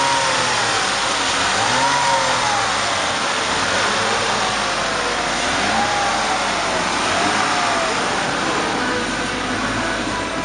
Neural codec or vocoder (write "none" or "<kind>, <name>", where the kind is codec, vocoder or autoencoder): none